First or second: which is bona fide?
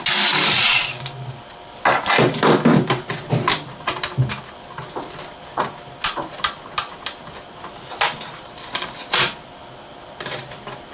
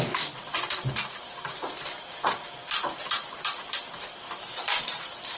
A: first